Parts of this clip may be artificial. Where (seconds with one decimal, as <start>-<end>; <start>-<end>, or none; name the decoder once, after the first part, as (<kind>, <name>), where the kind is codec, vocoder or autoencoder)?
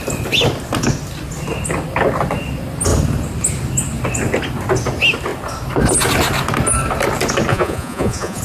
7.5-8.4 (vocoder, Vocos)